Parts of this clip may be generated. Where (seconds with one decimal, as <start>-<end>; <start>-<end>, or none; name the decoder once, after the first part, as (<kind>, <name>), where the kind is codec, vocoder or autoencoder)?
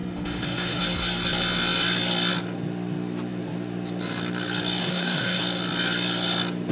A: 0.0-0.8 (autoencoder, DAC-VAE); 4.8-5.4